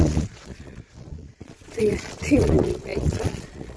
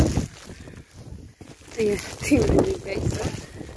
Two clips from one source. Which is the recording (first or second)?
second